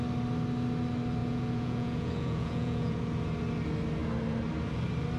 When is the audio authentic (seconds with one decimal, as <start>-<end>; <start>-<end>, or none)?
0.0-1.2; 3.0-5.2